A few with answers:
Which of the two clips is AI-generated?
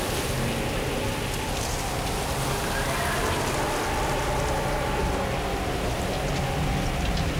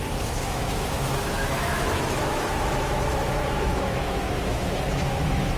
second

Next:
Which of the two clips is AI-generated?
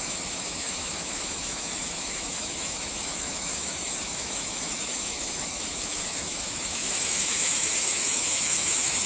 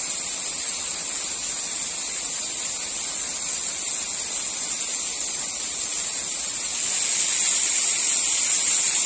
first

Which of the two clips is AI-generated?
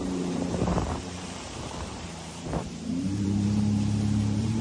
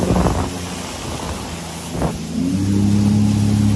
first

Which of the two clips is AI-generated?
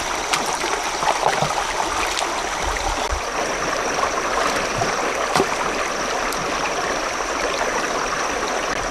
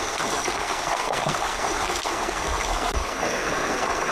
second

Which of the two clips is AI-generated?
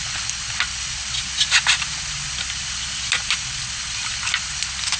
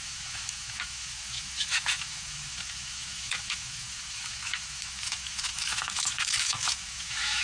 second